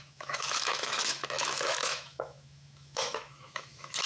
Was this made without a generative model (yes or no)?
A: no